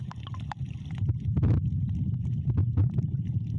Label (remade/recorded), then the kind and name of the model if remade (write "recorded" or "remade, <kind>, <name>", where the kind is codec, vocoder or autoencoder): recorded